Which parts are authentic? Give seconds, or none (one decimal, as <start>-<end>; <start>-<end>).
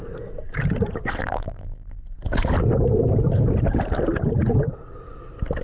0.0-1.2; 2.0-5.6